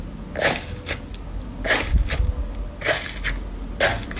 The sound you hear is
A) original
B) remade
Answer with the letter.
A